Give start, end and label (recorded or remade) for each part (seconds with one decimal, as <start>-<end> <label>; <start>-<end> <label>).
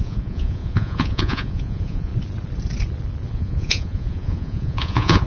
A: 0.0-2.1 remade; 2.1-3.3 recorded; 3.3-5.3 remade